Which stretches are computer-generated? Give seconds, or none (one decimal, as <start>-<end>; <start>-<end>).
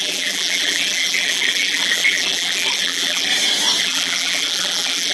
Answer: 0.0-3.3; 3.8-5.1